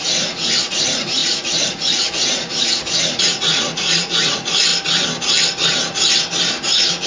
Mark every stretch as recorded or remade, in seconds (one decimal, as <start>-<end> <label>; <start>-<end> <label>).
0.0-4.7 remade; 4.7-6.5 recorded; 6.5-7.1 remade